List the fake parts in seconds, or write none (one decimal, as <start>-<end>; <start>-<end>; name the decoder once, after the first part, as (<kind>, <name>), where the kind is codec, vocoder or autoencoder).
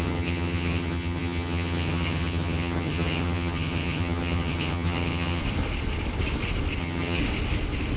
0.0-5.4 (vocoder, HiFi-GAN); 6.8-7.2